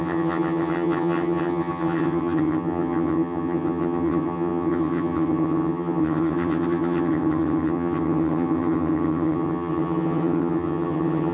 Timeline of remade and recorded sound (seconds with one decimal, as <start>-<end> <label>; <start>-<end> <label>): 0.0-11.3 remade